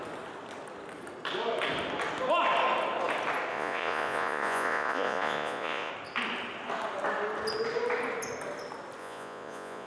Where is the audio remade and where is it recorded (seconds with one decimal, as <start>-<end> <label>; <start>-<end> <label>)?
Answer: 0.0-3.5 recorded; 3.5-5.9 remade; 5.9-9.0 recorded; 9.0-9.9 remade